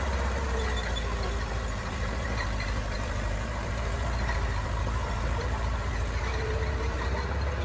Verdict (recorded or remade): remade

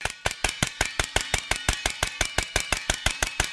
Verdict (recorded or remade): remade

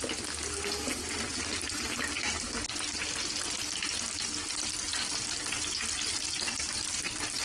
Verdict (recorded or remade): recorded